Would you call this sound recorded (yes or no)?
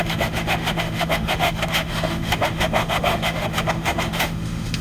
no